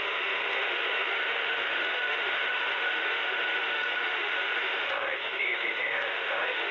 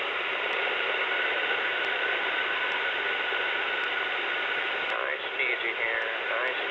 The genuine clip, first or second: second